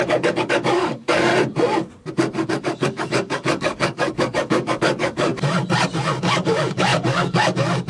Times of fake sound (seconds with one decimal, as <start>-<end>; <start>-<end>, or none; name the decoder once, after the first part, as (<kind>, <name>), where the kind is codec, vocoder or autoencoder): 0.0-1.3 (codec, DAC); 2.5-5.3; 6.2-7.9